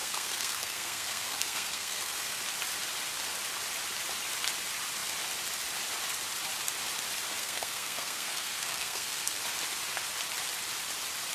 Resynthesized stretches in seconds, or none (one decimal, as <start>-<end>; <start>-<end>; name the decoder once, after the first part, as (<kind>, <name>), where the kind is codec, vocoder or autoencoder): 0.0-2.4 (codec, SNAC); 7.4-9.4